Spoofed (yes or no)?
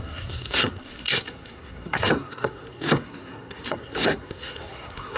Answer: yes